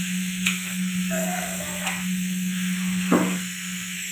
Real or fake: fake